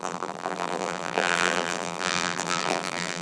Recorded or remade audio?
remade